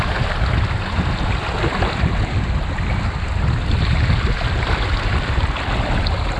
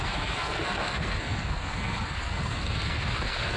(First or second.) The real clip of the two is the first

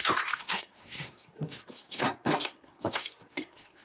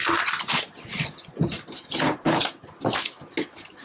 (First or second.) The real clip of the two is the second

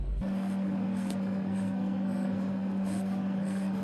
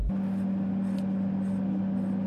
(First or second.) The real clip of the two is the second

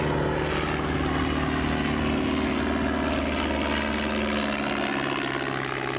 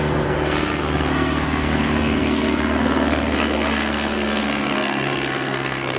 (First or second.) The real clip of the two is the first